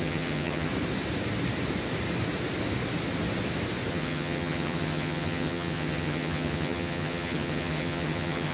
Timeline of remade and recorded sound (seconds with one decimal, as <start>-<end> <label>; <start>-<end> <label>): 0.0-0.7 remade; 0.7-3.9 recorded; 3.9-8.5 remade